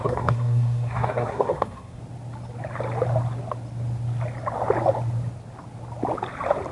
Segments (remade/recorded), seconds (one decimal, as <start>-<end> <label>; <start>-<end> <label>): 0.0-2.0 remade; 2.0-6.7 recorded